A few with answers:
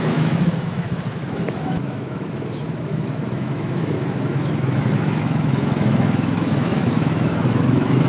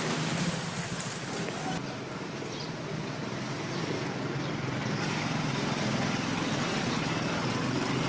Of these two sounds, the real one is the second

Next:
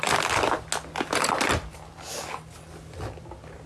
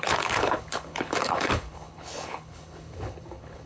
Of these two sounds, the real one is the first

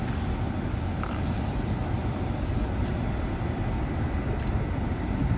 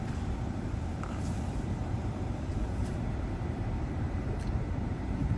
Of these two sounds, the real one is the first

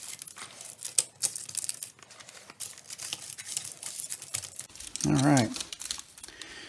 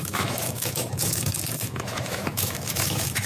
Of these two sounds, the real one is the first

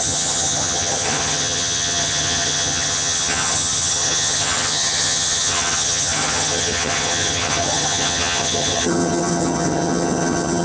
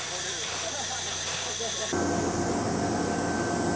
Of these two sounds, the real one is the second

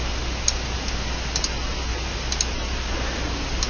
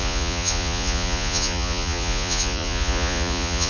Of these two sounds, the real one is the first